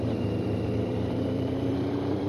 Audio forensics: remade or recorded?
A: remade